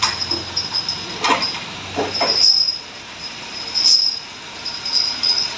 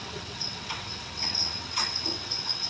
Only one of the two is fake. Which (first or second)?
second